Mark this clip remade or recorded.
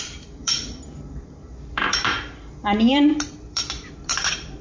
remade